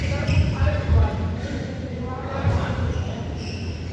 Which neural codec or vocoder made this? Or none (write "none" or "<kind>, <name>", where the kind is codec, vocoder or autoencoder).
vocoder, BigVGAN v2